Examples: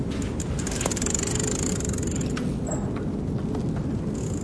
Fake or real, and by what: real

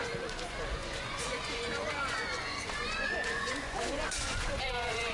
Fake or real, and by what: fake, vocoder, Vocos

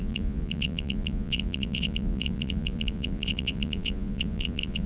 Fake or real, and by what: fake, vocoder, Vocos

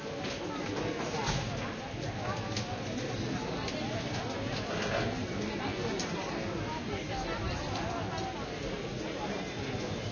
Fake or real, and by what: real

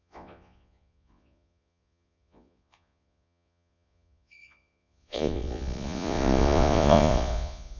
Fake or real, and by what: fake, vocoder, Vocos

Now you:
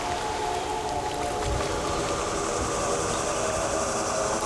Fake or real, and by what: real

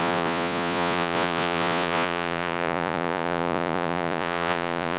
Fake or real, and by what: fake, vocoder, Vocos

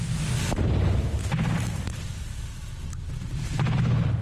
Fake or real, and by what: real